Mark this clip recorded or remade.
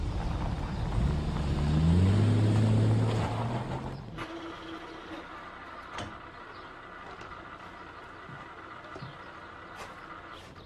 recorded